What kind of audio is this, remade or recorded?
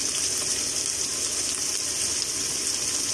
recorded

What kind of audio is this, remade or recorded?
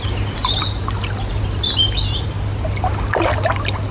recorded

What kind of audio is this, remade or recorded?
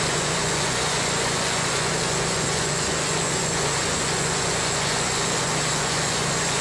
remade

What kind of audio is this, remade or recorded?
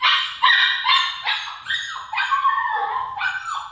remade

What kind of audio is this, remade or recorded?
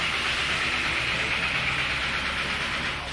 recorded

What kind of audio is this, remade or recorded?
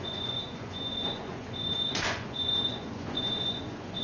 remade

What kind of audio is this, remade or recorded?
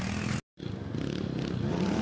recorded